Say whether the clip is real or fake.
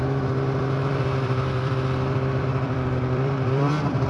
fake